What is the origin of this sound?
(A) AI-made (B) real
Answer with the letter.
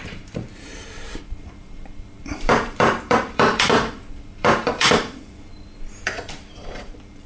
A